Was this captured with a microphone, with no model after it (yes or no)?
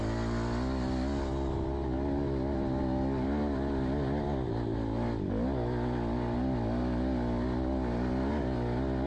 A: yes